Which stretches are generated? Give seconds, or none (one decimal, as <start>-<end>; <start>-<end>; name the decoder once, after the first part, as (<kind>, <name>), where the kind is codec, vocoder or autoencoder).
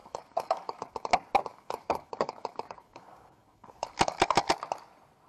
0.0-1.1 (codec, DAC); 1.5-4.5